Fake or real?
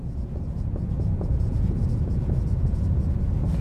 fake